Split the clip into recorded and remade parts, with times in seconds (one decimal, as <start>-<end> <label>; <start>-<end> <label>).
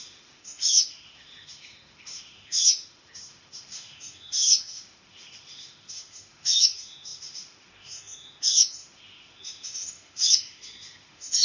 0.0-11.4 remade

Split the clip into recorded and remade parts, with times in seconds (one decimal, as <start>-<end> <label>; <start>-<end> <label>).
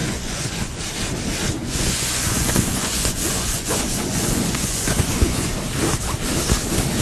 0.0-0.8 remade; 0.8-1.6 recorded; 1.6-5.5 remade; 5.5-7.0 recorded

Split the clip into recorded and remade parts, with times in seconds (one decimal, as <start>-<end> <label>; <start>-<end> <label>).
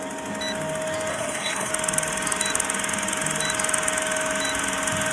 0.0-1.1 recorded; 1.1-1.7 remade; 1.7-5.1 recorded